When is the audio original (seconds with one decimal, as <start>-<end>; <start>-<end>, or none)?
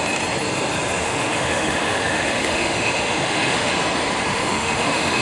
0.0-1.0; 3.7-4.3